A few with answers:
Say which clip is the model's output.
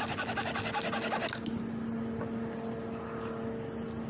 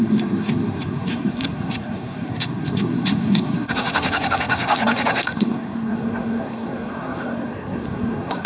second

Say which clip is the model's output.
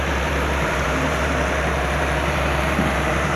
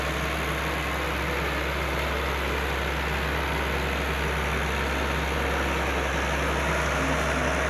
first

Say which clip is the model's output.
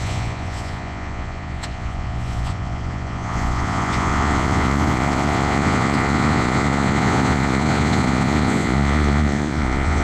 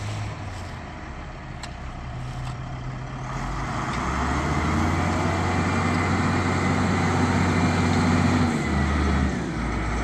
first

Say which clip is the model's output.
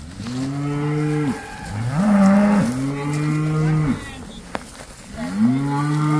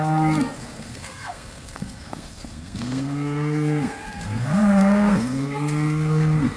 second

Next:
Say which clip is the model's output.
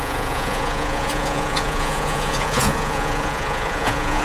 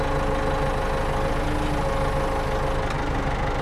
first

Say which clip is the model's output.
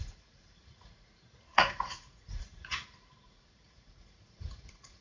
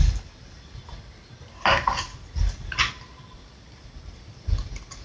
first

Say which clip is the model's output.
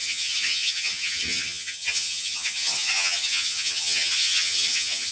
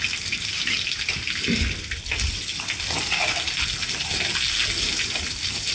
first